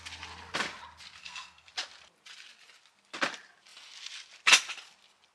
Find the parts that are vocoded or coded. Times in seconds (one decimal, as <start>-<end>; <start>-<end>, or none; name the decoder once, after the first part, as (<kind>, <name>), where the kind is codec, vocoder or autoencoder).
1.2-1.7 (codec, SNAC)